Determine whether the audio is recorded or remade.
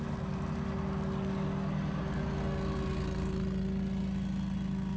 recorded